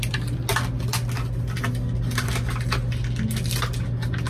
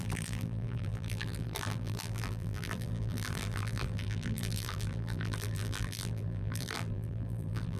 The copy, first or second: second